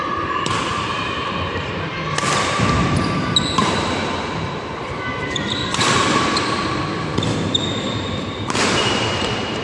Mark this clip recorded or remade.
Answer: remade